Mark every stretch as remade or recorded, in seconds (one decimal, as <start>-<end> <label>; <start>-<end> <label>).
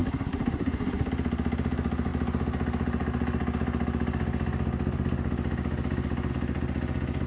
0.0-1.1 remade; 1.1-7.3 recorded